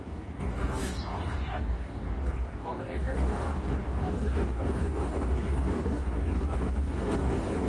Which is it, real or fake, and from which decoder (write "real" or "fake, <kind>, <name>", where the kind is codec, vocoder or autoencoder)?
fake, codec, DAC